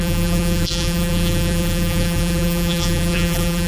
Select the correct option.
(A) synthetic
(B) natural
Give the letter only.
A